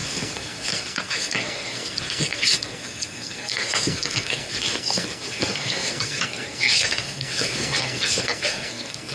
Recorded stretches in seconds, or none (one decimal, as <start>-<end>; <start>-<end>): none